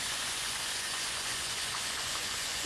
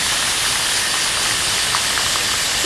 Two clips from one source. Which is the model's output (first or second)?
first